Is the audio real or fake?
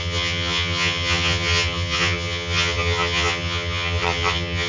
fake